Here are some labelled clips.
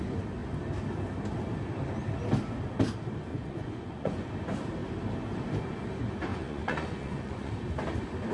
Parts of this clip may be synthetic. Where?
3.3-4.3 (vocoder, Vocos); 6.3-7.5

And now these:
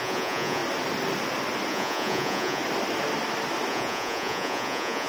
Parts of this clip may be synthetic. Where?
0.0-0.6 (vocoder, Vocos); 1.7-2.6; 3.7-5.1

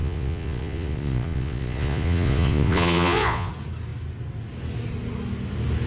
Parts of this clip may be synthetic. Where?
0.0-3.5 (vocoder, Vocos)

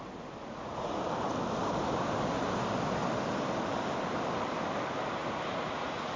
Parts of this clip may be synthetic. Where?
0.4-1.0 (vocoder, Vocos); 5.2-6.2

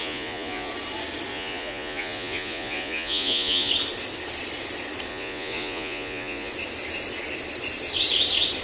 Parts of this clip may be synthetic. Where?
0.0-0.7 (vocoder, Vocos); 1.3-3.7; 5.1-6.5